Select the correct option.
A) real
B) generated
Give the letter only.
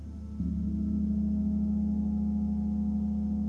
A